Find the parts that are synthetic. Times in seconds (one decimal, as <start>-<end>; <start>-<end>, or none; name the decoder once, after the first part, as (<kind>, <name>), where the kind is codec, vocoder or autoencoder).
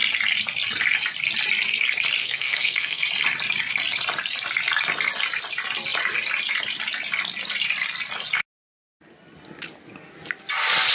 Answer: 2.2-3.0 (codec, SNAC)